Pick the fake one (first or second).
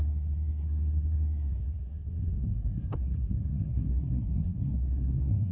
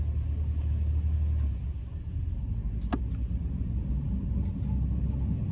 first